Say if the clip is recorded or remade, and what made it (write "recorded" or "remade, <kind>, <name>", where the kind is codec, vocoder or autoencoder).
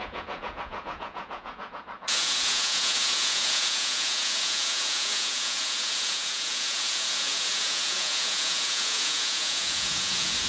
remade, vocoder, Vocos